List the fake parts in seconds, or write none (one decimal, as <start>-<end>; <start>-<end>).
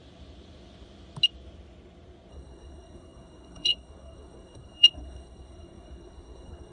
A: 2.3-6.7